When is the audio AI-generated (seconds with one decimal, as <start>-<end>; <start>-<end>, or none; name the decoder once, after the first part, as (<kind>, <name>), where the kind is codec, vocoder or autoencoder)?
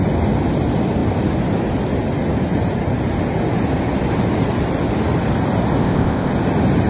5.8-6.3 (codec, ZipCodec)